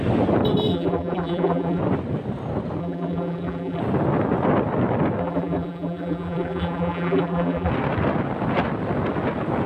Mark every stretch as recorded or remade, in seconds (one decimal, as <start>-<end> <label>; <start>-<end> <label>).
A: 0.0-0.7 recorded; 0.7-1.8 remade; 1.8-2.8 recorded; 2.8-3.8 remade; 3.8-5.2 recorded; 5.2-7.7 remade; 7.7-9.7 recorded